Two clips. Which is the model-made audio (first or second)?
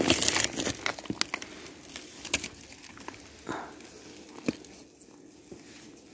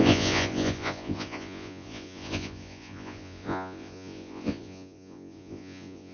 second